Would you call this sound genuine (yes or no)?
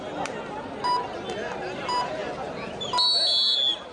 yes